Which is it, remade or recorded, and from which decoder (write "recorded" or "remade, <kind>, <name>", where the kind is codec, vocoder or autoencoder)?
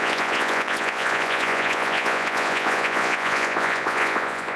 remade, vocoder, Vocos